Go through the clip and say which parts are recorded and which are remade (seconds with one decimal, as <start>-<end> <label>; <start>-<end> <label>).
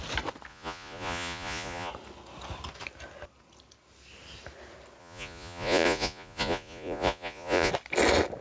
0.0-0.5 recorded; 0.5-1.9 remade; 1.9-5.0 recorded; 5.0-7.7 remade; 7.7-8.4 recorded